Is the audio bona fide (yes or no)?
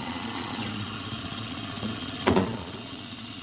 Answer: no